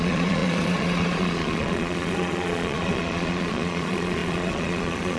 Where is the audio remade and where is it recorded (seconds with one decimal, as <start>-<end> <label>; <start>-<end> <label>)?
0.0-5.2 remade